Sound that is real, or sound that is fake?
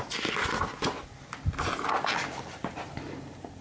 real